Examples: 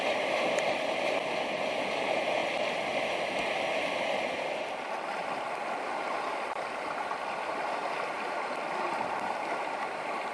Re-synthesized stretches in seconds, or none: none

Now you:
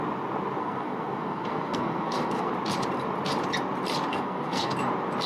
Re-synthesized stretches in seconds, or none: 0.6-2.5 (codec, SNAC); 4.1-4.7

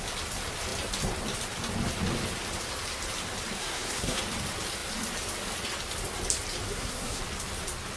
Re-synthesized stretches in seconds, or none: 3.6-4.2 (codec, SNAC); 6.7-7.2